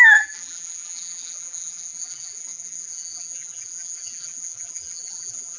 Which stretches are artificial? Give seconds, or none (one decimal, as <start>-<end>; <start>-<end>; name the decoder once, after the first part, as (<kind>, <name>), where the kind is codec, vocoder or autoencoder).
0.0-5.6 (vocoder, BigVGAN v2)